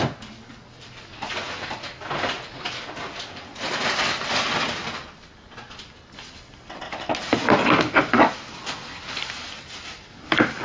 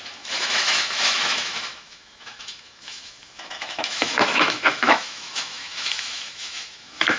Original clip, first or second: first